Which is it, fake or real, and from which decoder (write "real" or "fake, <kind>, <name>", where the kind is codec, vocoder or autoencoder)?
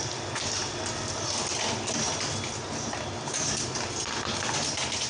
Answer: real